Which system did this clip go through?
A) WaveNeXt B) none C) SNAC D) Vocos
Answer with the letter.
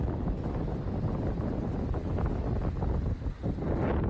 B